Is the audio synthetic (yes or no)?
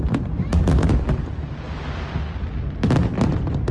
no